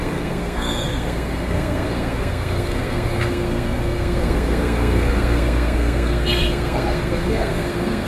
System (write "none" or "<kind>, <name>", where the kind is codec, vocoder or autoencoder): codec, SNAC